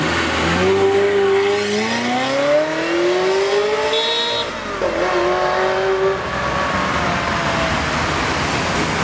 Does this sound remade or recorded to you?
recorded